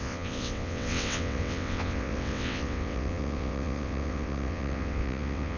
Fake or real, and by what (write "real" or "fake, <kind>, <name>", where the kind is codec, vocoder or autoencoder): fake, vocoder, WaveNeXt